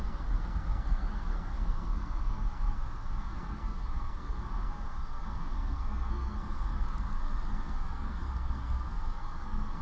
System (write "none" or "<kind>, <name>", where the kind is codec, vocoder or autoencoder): codec, SNAC